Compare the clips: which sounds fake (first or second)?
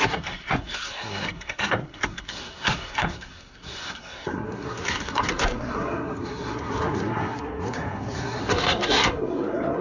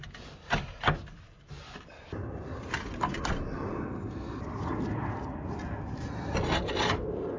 first